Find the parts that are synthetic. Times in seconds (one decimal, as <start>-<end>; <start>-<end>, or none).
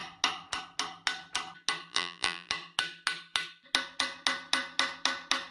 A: 1.9-2.5